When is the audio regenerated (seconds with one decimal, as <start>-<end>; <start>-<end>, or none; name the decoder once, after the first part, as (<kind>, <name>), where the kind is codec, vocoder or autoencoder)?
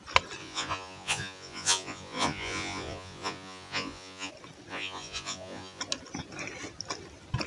0.4-4.3 (vocoder, Vocos); 4.7-5.8